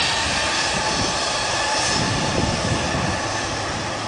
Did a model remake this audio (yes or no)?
no